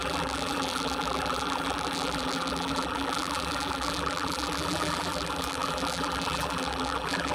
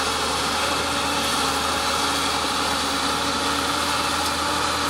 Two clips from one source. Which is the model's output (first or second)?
first